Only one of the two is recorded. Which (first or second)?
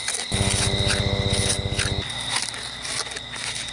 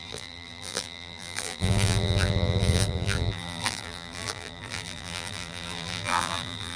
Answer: first